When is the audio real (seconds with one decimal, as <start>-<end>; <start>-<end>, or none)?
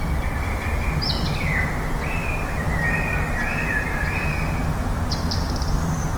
0.0-6.2